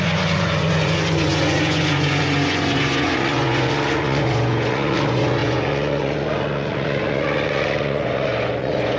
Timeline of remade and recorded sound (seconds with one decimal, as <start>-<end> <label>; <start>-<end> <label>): 0.0-9.0 remade